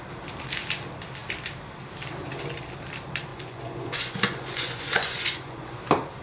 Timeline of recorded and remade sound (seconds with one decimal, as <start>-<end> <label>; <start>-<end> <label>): 0.0-3.3 recorded; 3.3-5.8 remade; 5.8-6.2 recorded